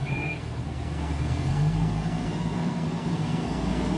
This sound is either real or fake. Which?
fake